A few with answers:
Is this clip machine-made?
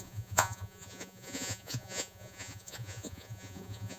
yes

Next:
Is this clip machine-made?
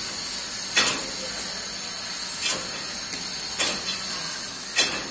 no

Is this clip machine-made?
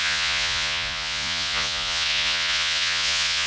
yes